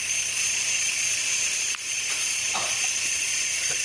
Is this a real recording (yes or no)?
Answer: no